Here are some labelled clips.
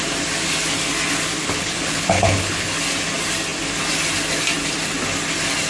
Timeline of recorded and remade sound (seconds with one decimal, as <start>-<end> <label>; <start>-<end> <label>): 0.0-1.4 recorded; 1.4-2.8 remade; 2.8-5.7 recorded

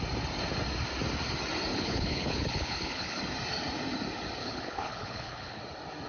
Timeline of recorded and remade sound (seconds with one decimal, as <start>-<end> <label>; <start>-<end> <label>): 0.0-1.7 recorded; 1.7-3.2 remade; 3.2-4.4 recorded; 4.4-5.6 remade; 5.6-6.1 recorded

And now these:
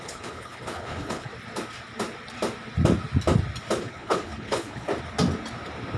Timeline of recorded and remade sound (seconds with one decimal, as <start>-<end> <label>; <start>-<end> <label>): 0.0-1.3 remade; 1.3-3.8 recorded; 3.8-4.9 remade; 4.9-6.0 recorded

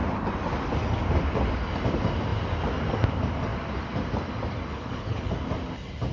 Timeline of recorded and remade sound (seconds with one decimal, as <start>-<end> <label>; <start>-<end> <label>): 0.0-4.7 recorded; 4.7-5.3 remade; 5.3-6.1 recorded

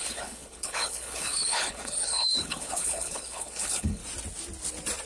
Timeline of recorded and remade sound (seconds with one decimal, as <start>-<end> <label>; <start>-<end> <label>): 0.0-4.0 remade; 4.0-5.1 recorded

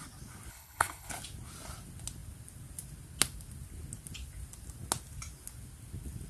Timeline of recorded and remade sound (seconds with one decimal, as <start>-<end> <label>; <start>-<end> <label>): 0.0-0.5 recorded; 0.5-1.1 remade; 1.1-6.3 recorded